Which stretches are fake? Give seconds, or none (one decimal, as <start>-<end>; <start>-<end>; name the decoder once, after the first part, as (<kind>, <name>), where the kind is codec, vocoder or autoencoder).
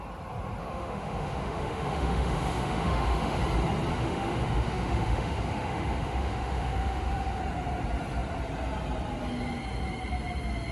0.6-3.4 (autoencoder, DAC-VAE); 3.9-7.4